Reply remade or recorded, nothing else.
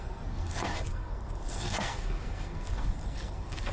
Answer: remade